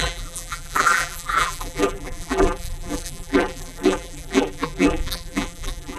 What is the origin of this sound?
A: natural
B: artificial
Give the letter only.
B